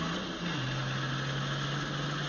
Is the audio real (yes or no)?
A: yes